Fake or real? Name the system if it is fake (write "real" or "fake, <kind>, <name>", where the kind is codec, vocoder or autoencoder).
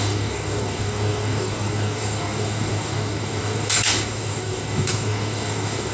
fake, codec, DAC